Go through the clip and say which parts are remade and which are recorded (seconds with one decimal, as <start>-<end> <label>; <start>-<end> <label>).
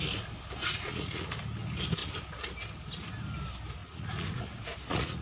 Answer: 0.0-0.6 recorded; 0.6-1.3 remade; 1.3-3.8 recorded; 3.8-5.2 remade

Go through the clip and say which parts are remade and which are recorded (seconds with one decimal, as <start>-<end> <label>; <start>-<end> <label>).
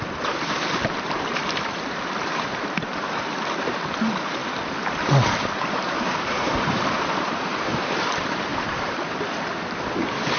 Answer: 0.0-10.4 remade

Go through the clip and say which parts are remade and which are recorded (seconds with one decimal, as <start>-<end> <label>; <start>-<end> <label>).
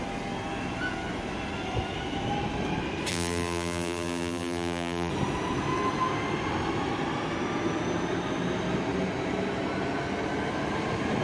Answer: 0.0-3.1 recorded; 3.1-5.1 remade; 5.1-11.2 recorded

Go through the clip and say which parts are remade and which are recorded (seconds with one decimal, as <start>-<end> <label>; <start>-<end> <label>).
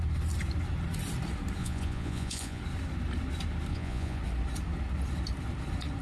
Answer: 0.0-1.6 recorded; 1.6-2.6 remade; 2.6-3.7 recorded; 3.7-4.2 remade; 4.2-6.0 recorded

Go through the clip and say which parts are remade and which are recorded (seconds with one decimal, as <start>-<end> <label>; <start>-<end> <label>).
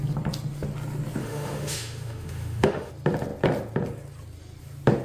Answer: 0.0-1.2 recorded; 1.2-2.9 remade; 2.9-5.0 recorded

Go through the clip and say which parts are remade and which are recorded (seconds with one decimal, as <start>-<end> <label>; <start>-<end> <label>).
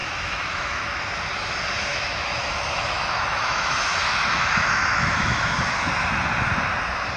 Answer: 0.0-1.0 remade; 1.0-1.9 recorded; 1.9-5.9 remade; 5.9-7.2 recorded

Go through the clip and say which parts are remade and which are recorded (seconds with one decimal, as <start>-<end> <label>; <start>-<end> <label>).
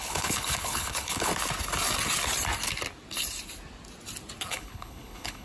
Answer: 0.0-1.3 remade; 1.3-4.5 recorded; 4.5-5.4 remade